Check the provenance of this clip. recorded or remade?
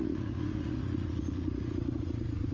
remade